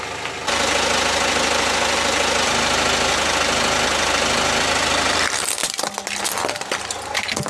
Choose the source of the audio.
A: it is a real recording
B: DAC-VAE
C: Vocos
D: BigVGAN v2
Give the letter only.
A